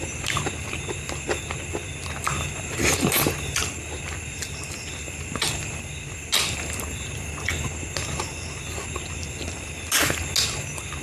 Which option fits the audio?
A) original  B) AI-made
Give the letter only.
A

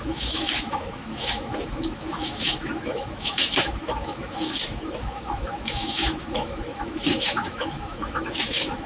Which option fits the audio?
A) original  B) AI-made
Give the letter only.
B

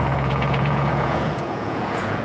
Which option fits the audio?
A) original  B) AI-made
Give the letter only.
B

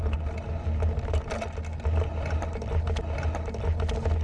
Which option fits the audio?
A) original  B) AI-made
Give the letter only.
A